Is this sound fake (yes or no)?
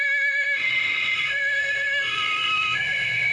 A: yes